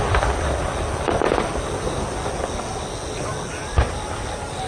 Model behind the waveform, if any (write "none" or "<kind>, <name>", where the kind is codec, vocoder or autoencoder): none